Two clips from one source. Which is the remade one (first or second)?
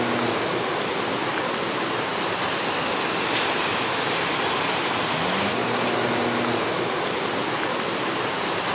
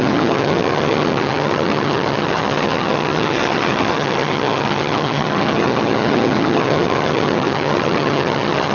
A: second